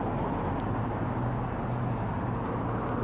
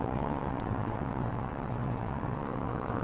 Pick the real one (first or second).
first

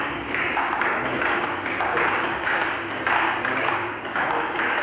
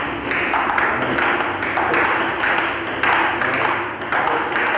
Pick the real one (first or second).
second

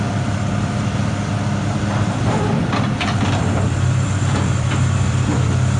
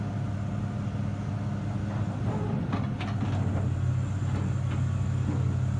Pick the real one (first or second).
second